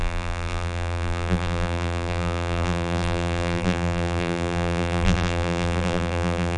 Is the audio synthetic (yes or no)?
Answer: yes